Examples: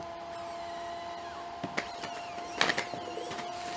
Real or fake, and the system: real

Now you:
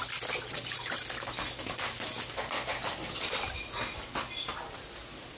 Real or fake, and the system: real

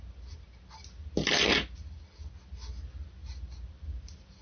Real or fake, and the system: real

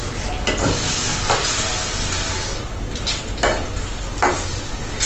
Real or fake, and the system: real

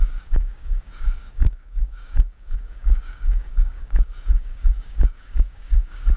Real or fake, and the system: fake, codec, DAC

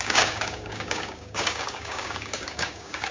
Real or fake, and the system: fake, codec, DAC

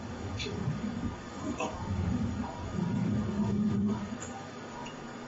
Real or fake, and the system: fake, codec, DAC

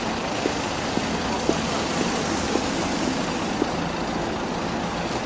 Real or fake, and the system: real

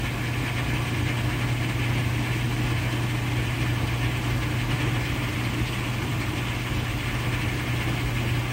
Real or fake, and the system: real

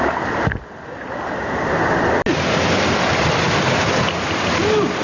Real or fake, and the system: real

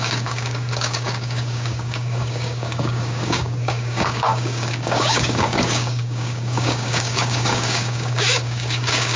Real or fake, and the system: fake, codec, DAC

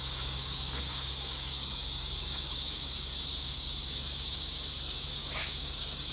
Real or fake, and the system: fake, codec, DAC